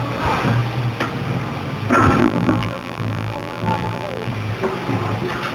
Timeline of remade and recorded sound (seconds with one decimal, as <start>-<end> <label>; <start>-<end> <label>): 0.0-2.2 recorded; 2.2-4.3 remade; 4.3-5.5 recorded

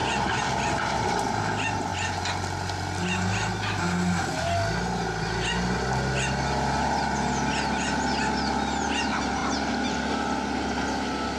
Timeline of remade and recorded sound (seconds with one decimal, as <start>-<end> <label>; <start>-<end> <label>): 0.0-1.0 remade; 1.0-11.4 recorded